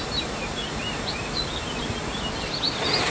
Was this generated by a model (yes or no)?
no